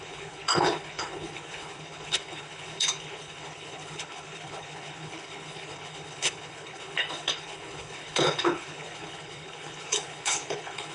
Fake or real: fake